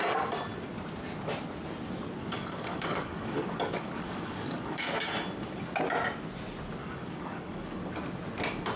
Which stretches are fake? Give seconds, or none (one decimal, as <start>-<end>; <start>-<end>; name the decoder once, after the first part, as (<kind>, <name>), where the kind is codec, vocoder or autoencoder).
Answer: 2.2-4.8 (codec, DAC); 6.8-7.8